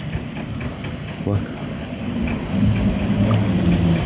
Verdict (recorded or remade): recorded